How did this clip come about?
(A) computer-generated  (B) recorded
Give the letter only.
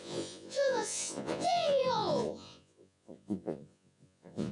A